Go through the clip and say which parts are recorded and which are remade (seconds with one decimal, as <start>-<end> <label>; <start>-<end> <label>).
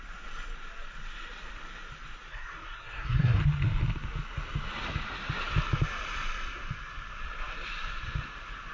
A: 0.0-2.3 recorded; 2.3-3.4 remade; 3.4-8.7 recorded